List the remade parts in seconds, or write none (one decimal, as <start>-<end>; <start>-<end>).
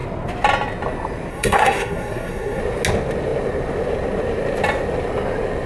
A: 1.3-2.6